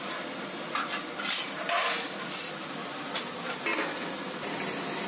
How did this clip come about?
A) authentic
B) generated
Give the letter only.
A